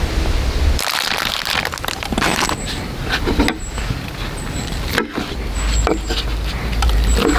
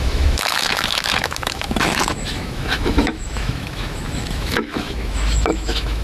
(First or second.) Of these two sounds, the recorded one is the first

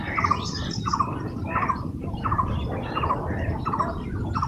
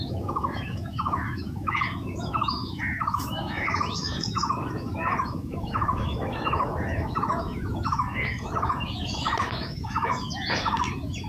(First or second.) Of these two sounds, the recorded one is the first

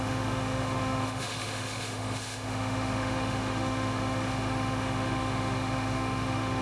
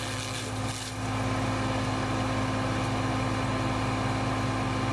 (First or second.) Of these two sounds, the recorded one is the second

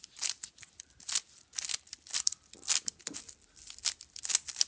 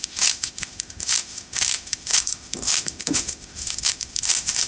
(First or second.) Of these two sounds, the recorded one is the first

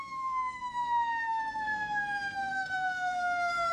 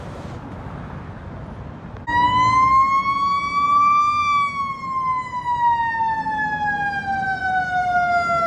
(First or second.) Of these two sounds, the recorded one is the second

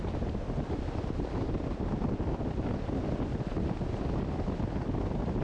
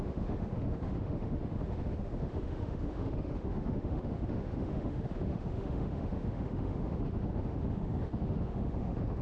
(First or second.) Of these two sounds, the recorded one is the first